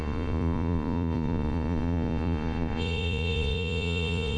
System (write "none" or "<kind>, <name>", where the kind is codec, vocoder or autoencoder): vocoder, Vocos